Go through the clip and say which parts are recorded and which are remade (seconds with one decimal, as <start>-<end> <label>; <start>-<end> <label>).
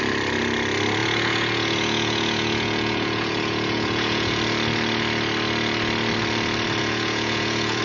0.0-1.0 recorded; 1.0-4.4 remade; 4.4-6.8 recorded; 6.8-7.8 remade